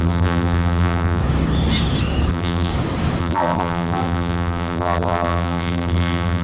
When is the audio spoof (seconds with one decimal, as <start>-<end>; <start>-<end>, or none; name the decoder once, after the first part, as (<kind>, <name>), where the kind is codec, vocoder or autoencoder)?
0.0-1.2 (vocoder, BigVGAN v2); 2.3-2.7; 3.2-6.4